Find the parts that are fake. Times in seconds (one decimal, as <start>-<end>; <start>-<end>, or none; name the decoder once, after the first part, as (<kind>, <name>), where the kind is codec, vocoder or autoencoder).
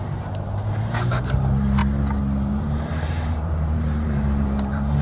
0.0-1.8 (vocoder, BigVGAN v2); 2.5-5.0